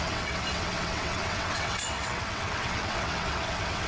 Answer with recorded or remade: remade